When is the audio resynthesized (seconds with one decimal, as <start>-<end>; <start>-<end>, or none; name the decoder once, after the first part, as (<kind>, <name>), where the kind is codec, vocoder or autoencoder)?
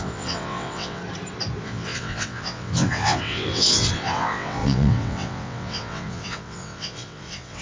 0.0-1.0 (vocoder, WaveNeXt); 1.6-7.6